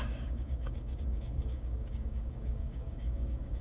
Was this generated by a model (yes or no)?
yes